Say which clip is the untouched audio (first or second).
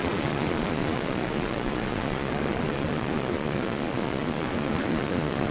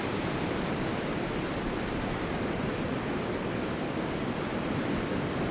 second